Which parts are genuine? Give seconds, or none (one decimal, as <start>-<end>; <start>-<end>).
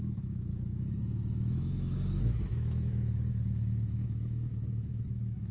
none